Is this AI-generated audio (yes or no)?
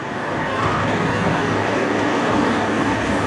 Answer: yes